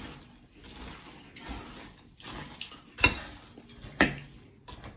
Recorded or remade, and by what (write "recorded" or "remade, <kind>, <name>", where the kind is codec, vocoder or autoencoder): recorded